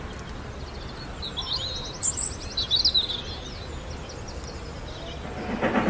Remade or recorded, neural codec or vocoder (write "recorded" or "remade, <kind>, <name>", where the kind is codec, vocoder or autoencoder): recorded